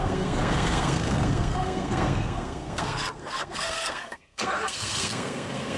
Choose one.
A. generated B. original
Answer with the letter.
A